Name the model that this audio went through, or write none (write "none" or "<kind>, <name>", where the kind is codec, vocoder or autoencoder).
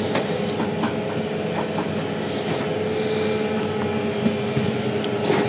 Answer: none